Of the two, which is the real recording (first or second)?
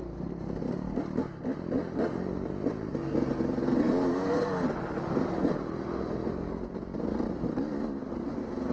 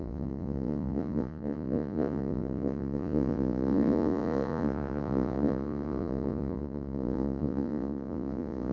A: first